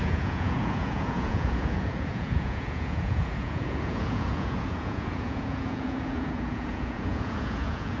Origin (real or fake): fake